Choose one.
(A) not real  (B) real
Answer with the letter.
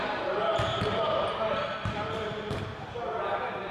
A